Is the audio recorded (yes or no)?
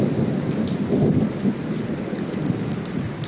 yes